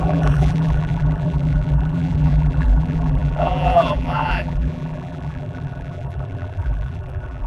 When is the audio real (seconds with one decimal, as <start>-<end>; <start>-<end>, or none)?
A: none